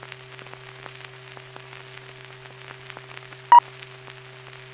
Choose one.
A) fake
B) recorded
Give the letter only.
B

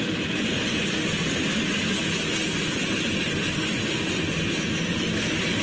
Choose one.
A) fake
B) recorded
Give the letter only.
B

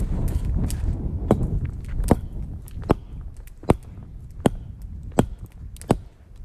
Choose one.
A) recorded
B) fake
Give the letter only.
A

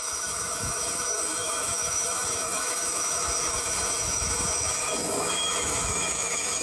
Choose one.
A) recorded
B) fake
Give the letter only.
B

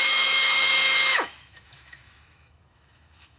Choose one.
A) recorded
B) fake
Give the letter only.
B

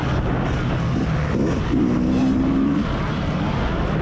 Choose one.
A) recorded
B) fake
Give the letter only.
A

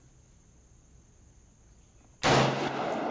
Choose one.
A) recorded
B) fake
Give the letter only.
A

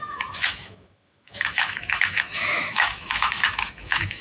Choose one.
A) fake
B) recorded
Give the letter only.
A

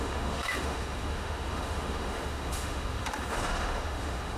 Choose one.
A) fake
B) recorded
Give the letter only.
A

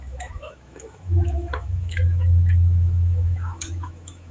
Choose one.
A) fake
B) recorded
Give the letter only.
A